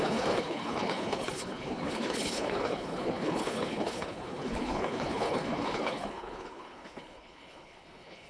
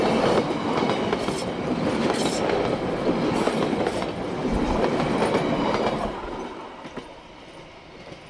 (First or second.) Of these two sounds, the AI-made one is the first